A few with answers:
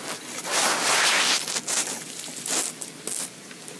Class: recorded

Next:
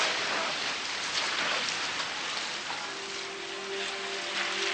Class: recorded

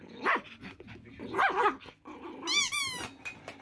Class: recorded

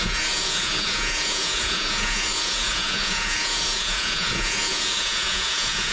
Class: remade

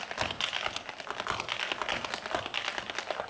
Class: recorded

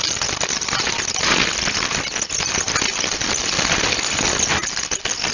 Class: recorded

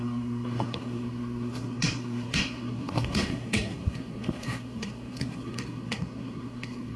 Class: remade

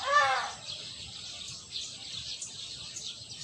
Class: recorded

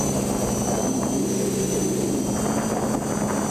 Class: recorded